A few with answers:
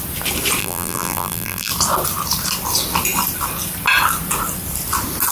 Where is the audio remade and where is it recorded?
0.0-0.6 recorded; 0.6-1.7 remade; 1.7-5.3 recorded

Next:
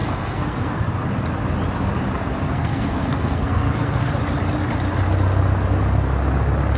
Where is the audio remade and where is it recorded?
0.0-0.8 remade; 0.8-2.5 recorded; 2.5-4.1 remade; 4.1-6.8 recorded

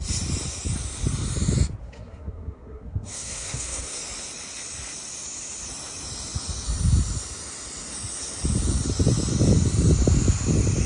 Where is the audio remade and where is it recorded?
0.0-1.8 recorded; 1.8-4.0 remade; 4.0-10.9 recorded

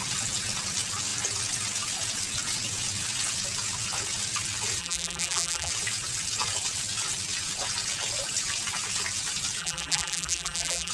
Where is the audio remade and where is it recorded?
0.0-4.8 recorded; 4.8-5.7 remade; 5.7-9.6 recorded; 9.6-10.9 remade

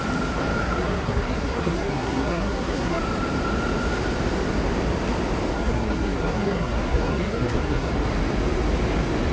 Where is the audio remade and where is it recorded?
0.0-0.6 recorded; 0.6-3.0 remade; 3.0-5.5 recorded; 5.5-7.9 remade; 7.9-9.3 recorded

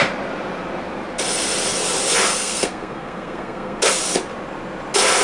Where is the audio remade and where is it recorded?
0.0-2.3 recorded; 2.3-3.8 remade; 3.8-5.2 recorded

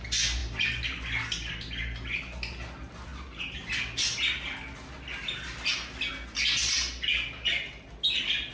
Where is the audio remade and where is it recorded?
0.0-8.5 recorded

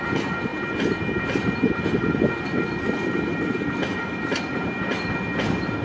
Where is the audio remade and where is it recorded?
0.0-5.8 recorded